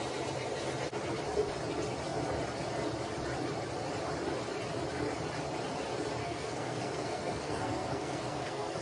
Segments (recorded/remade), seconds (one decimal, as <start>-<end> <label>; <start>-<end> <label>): 0.0-6.2 recorded; 6.2-8.8 remade